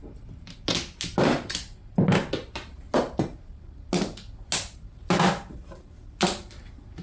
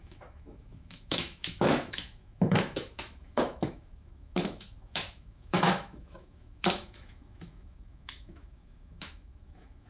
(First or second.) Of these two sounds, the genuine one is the first